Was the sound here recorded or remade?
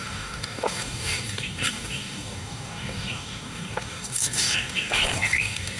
remade